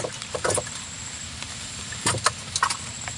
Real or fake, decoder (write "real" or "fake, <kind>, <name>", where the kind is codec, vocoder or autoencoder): real